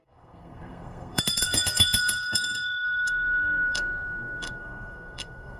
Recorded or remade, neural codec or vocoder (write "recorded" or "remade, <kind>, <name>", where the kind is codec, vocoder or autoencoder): remade, codec, SNAC